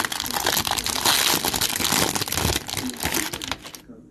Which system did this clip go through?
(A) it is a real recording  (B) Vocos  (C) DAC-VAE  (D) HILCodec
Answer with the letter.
A